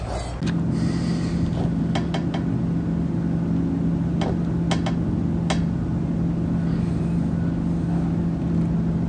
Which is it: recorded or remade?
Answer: recorded